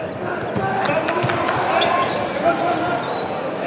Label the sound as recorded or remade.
recorded